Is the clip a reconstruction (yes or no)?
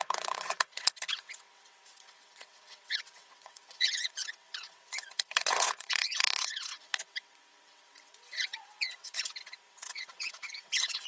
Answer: yes